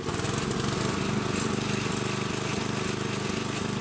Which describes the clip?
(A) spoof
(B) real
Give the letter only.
B